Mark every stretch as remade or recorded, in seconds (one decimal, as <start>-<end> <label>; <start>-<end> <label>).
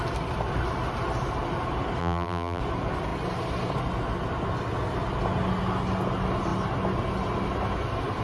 0.0-2.0 recorded; 2.0-2.6 remade; 2.6-8.2 recorded